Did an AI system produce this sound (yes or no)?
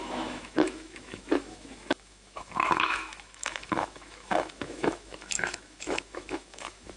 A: yes